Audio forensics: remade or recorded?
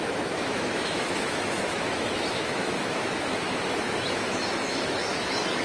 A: remade